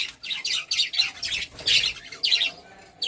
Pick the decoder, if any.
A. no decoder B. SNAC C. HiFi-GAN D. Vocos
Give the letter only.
A